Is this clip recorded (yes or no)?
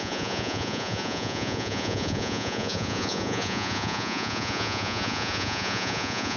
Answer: no